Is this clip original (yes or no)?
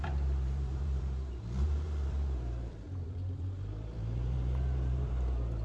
no